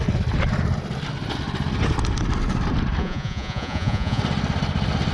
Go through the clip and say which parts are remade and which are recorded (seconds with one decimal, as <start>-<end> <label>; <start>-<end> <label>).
0.0-3.0 recorded; 3.0-4.2 remade; 4.2-5.1 recorded